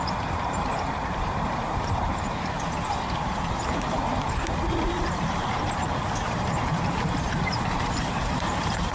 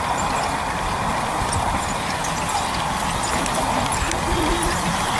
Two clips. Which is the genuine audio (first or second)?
second